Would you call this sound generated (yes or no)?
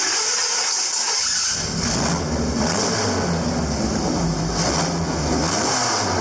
no